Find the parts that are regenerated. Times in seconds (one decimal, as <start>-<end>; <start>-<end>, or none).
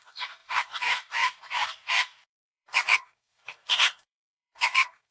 0.0-5.1